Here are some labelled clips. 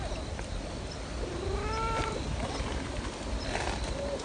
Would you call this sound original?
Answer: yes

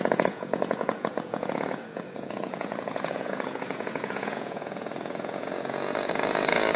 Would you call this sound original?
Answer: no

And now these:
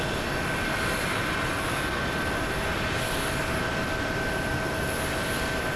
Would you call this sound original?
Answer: yes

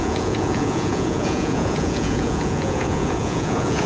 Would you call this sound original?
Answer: no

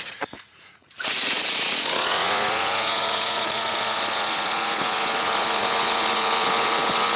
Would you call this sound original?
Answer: no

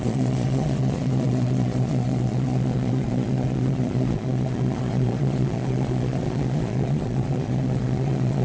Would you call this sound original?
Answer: no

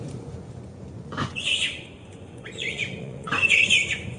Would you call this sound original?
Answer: no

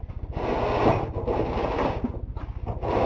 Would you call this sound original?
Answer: yes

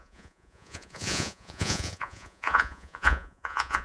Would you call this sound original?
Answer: no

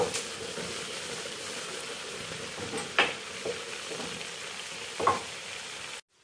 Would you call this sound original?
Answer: yes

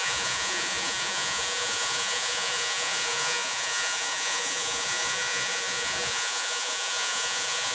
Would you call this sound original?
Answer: no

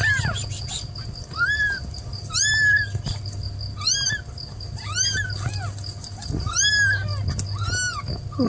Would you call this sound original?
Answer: yes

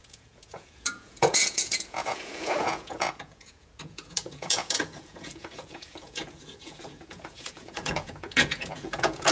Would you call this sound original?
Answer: no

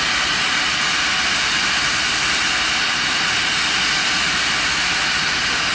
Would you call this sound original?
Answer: yes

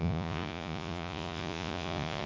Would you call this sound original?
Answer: no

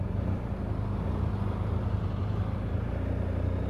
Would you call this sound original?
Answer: yes